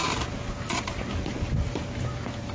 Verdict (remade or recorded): recorded